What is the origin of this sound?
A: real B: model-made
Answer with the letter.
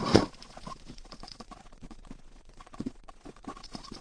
B